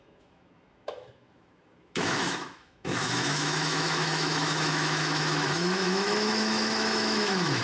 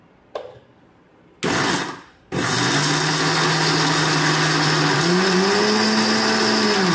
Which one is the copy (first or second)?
first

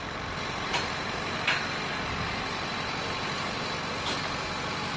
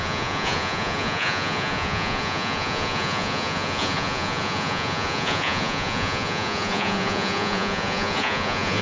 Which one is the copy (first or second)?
second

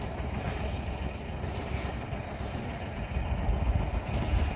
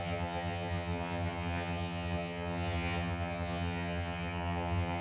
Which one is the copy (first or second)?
second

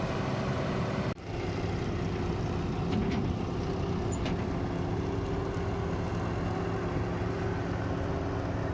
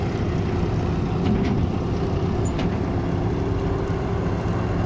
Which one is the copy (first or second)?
second